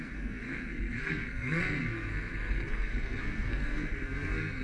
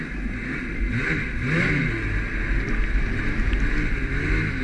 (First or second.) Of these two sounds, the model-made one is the first